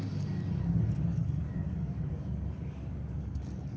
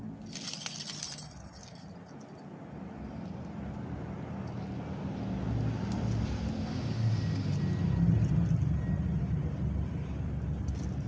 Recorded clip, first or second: second